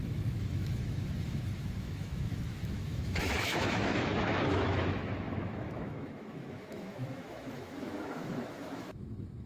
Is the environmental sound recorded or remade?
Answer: remade